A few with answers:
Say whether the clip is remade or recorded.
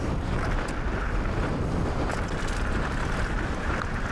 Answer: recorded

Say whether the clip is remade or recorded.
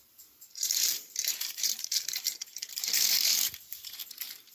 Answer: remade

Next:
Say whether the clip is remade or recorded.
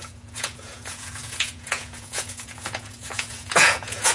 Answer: remade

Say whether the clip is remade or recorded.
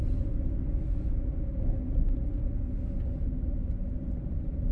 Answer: recorded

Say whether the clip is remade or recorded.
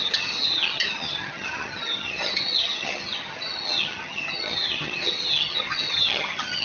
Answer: remade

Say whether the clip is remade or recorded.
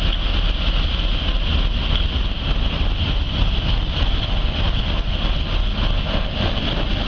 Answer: recorded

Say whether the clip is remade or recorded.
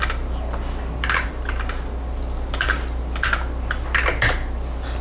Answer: recorded